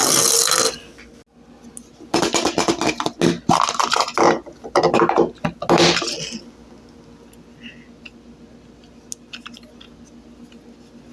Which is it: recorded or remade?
recorded